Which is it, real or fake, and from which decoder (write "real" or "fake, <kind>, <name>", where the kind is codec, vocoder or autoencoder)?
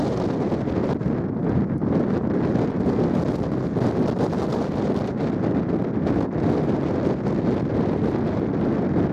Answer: real